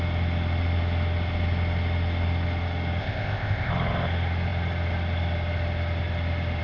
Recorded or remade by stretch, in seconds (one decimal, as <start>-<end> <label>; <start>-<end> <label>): 0.0-3.0 recorded; 3.0-3.7 remade; 3.7-6.6 recorded